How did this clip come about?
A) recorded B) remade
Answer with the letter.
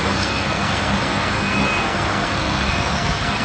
B